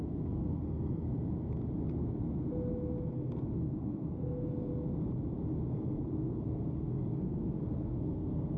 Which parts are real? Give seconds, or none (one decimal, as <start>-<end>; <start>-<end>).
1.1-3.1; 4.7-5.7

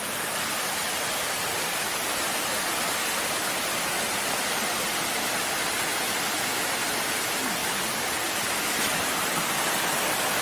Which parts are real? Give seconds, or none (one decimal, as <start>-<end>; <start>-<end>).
0.0-7.6; 9.8-10.4

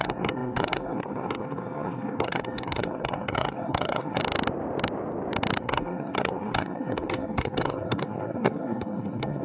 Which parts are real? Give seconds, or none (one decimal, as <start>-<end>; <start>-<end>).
4.2-5.6